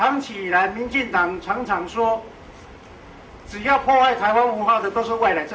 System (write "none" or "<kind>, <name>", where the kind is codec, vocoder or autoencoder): none